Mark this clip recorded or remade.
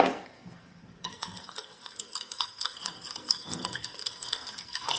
remade